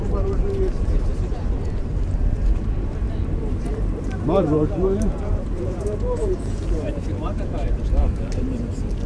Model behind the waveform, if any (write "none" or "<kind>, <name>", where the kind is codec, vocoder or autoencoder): vocoder, BigVGAN v2